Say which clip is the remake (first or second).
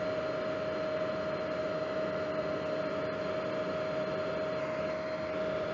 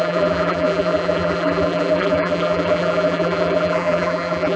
second